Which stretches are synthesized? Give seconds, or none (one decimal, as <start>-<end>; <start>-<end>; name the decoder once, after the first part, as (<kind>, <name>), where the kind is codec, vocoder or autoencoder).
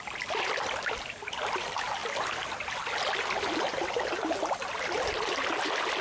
none